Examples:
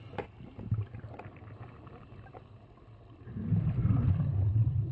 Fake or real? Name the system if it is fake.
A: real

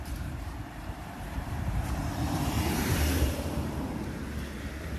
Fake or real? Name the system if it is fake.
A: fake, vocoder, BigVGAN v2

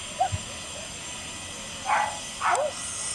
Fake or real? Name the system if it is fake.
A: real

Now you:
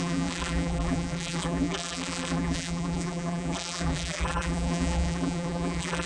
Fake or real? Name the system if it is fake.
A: fake, vocoder, BigVGAN v2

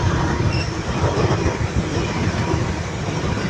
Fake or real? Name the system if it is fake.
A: fake, vocoder, BigVGAN v2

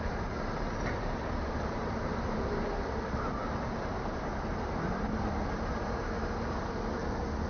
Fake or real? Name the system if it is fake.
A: fake, vocoder, BigVGAN v2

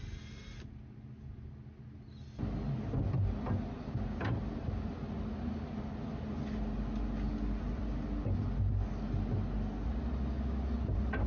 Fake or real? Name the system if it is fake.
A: real